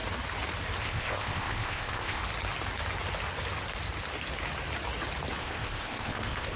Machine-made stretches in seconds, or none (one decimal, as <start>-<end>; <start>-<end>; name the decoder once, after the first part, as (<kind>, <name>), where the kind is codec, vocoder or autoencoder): 0.8-2.2 (codec, ZipCodec); 5.4-6.6